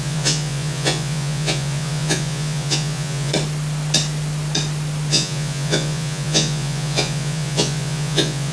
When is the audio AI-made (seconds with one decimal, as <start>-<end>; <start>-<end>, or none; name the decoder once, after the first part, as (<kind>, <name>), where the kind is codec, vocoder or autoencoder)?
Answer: 0.0-3.3 (vocoder, Vocos); 5.1-8.5